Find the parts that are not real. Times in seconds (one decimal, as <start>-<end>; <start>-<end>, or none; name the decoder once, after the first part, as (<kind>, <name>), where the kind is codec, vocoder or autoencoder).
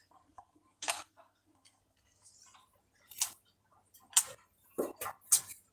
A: 0.0-2.3 (codec, SNAC)